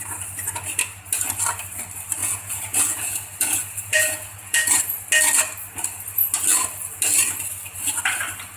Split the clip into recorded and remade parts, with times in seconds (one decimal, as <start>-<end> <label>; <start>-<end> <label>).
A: 0.0-2.2 recorded; 2.2-4.8 remade; 4.8-8.6 recorded